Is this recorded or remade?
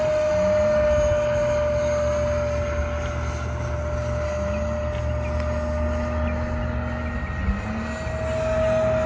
recorded